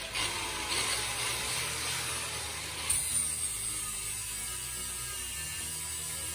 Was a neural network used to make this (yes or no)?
no